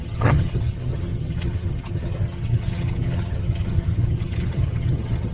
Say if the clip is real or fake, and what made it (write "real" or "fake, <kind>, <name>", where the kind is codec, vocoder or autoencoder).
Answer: fake, vocoder, HiFi-GAN